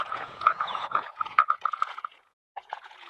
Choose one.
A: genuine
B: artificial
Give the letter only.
B